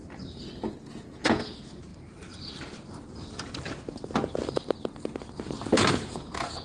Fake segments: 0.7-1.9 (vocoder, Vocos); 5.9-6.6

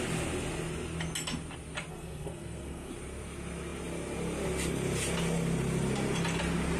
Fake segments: 1.9-2.9 (codec, SNAC)

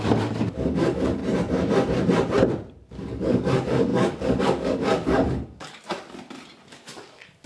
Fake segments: 0.0-1.2 (codec, DAC); 2.9-5.8; 6.7-7.5

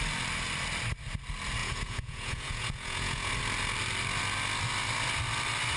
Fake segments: 1.6-3.3 (vocoder, Vocos)

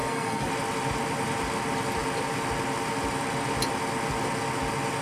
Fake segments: 0.0-0.5 (codec, SNAC)

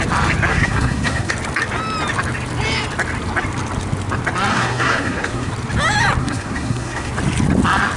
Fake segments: 0.5-1.3 (codec, SNAC); 4.5-5.5; 6.2-7.1